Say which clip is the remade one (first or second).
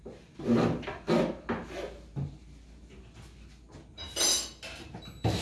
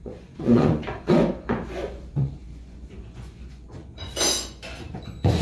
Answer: second